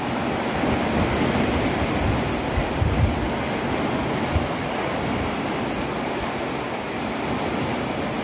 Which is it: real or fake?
real